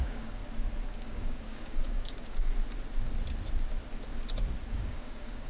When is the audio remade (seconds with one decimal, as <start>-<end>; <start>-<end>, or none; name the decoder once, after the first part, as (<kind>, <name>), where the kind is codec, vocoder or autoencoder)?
0.0-0.4 (codec, DAC); 0.9-2.5; 4.7-5.5